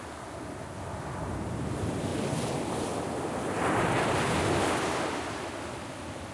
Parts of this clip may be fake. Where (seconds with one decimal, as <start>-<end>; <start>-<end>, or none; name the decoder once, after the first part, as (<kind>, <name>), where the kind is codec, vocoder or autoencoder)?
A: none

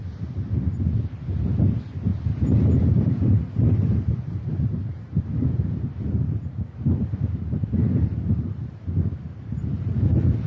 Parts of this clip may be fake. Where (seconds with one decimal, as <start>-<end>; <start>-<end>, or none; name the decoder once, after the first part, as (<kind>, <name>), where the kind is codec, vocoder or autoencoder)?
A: 2.1-5.2 (vocoder, BigVGAN v2); 8.1-9.8

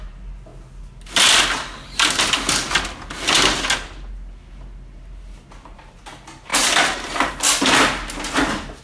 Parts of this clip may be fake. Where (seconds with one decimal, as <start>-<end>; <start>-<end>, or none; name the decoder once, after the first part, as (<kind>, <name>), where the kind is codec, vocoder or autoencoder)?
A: none

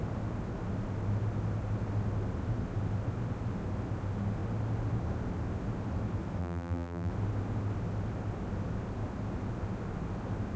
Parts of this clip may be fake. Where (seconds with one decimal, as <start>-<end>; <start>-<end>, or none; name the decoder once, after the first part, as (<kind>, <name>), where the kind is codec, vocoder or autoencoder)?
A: 6.4-7.1 (vocoder, BigVGAN v2)